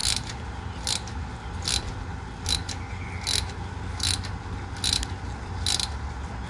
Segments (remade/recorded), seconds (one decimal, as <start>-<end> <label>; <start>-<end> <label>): 0.0-6.5 recorded